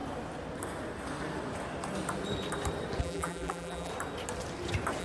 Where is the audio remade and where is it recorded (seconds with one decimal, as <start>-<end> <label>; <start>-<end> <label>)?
0.0-3.0 recorded; 3.0-3.9 remade; 3.9-5.0 recorded